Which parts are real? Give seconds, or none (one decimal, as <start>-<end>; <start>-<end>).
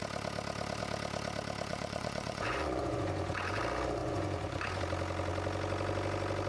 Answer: 0.0-1.7; 3.6-4.0; 4.8-6.5